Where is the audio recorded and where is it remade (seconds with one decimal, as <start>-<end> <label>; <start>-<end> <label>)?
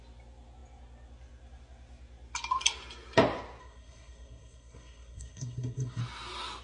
0.0-3.6 recorded; 3.6-6.0 remade; 6.0-6.6 recorded